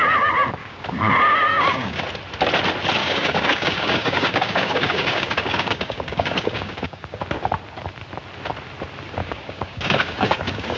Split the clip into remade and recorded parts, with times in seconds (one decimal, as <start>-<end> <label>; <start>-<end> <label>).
0.0-0.6 recorded; 0.6-1.1 remade; 1.1-1.5 recorded; 1.5-2.0 remade; 2.0-3.0 recorded; 3.0-7.2 remade; 7.2-9.2 recorded; 9.2-10.8 remade